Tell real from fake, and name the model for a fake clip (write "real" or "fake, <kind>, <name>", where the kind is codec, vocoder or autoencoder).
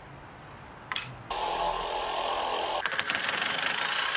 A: fake, vocoder, BigVGAN v2